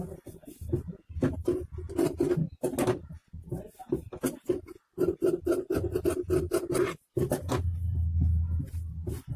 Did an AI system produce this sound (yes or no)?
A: no